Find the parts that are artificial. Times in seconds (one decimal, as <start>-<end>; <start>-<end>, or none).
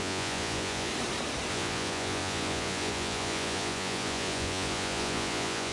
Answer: 0.0-0.9; 1.5-5.7